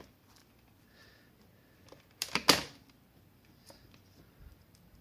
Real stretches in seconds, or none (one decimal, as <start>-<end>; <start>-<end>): 0.4-3.4